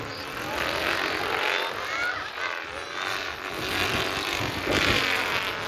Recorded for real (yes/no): yes